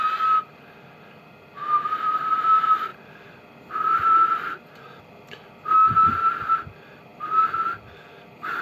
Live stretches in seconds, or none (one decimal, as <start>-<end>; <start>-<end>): 0.0-8.6